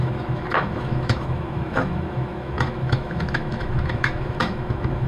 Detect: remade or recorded remade